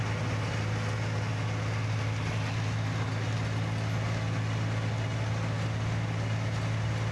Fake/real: real